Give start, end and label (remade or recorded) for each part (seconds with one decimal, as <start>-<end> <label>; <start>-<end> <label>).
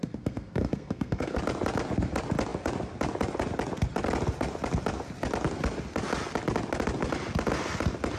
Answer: 0.0-1.4 remade; 1.4-8.2 recorded